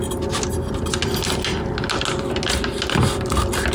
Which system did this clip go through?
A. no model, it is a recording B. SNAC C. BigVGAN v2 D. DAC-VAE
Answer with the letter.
A